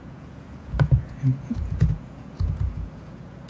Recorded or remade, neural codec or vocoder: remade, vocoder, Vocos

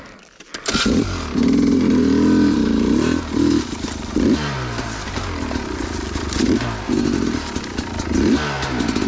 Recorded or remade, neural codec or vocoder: recorded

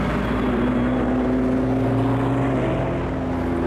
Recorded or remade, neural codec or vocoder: recorded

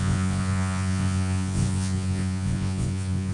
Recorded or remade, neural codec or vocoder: remade, vocoder, Vocos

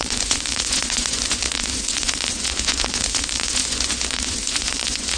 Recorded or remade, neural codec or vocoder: remade, vocoder, Vocos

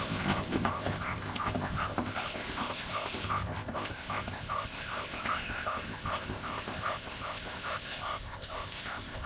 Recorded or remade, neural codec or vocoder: remade, codec, ZipCodec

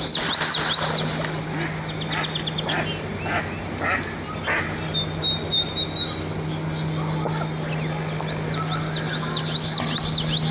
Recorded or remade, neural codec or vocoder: recorded